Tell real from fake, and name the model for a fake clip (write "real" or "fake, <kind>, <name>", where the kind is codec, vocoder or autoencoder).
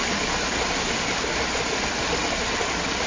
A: real